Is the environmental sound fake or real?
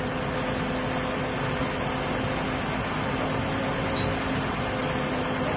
real